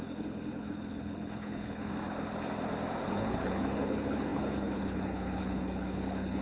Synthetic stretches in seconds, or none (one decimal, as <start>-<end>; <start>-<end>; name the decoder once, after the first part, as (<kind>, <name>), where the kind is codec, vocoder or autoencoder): 0.0-1.9 (codec, HILCodec); 3.1-6.4